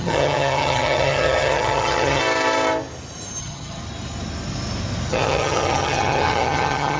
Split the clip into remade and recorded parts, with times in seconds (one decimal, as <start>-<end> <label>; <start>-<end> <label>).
0.0-2.2 remade; 2.2-3.4 recorded; 3.4-3.8 remade; 3.8-5.1 recorded; 5.1-7.0 remade